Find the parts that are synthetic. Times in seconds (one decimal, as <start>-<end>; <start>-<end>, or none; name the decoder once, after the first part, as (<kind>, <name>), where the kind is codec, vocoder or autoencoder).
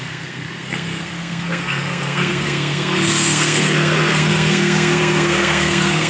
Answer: 0.0-6.1 (codec, SNAC)